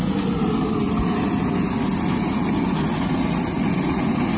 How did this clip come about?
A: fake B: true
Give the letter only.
B